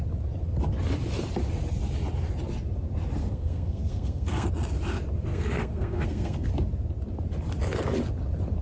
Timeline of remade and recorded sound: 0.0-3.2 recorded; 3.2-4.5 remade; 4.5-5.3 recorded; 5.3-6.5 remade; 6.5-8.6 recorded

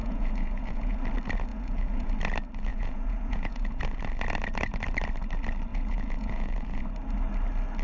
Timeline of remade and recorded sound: 0.0-1.0 remade; 1.0-1.5 recorded; 1.5-2.1 remade; 2.1-2.7 recorded; 2.7-3.8 remade; 3.8-5.7 recorded; 5.7-6.8 remade; 6.8-7.8 recorded

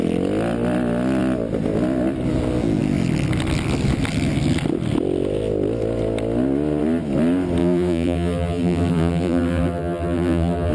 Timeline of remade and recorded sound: 0.0-7.6 recorded; 7.6-10.7 remade

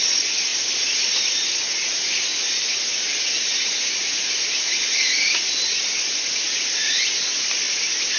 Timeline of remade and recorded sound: 0.0-8.2 recorded